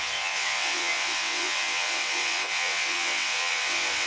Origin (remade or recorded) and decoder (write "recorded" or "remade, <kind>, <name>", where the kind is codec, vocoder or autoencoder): remade, vocoder, WaveNeXt